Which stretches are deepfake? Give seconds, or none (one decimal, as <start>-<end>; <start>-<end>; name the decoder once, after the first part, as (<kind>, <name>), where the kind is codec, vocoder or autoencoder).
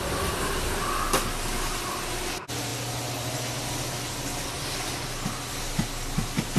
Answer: none